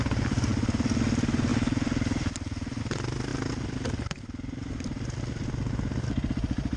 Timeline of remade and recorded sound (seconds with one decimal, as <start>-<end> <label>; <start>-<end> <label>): 0.0-6.8 recorded